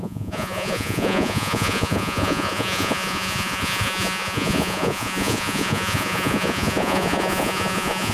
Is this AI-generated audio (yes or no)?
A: yes